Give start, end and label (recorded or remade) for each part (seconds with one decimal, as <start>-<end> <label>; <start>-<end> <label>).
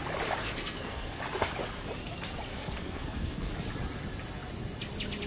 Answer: 0.0-0.4 recorded; 0.4-1.2 remade; 1.2-2.5 recorded; 2.5-3.5 remade; 3.5-5.3 recorded